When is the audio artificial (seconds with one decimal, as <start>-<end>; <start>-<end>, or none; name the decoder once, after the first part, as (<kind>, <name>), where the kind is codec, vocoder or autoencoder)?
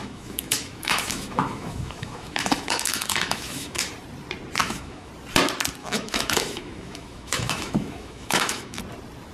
0.0-3.9 (autoencoder, DAC-VAE); 4.6-5.1; 5.8-8.8